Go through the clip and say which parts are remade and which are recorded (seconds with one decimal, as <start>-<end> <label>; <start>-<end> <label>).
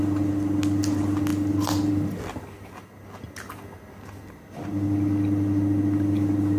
0.0-6.6 recorded